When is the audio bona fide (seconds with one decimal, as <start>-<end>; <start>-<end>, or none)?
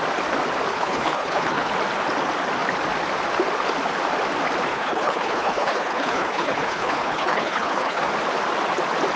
0.0-0.7; 1.7-4.7; 8.0-9.2